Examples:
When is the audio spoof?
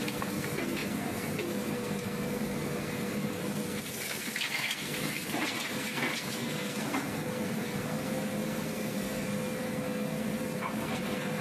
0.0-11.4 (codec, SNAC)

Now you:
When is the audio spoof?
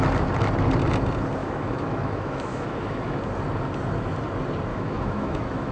1.4-3.2 (autoencoder, DAC-VAE); 4.7-5.7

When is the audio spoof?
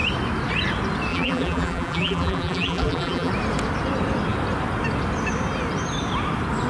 1.1-3.3 (vocoder, BigVGAN v2)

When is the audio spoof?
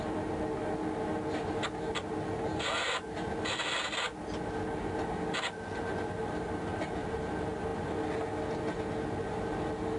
none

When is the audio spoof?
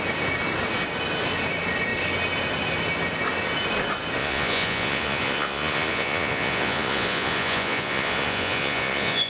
4.2-9.3 (vocoder, Vocos)